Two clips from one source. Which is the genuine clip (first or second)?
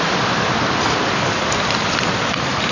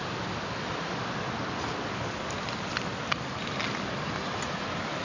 second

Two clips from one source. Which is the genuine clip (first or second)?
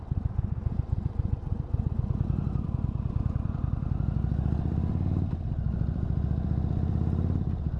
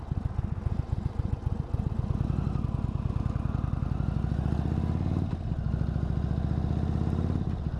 second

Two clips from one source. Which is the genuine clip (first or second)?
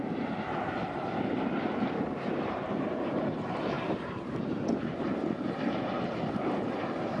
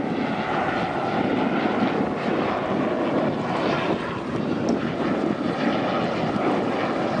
second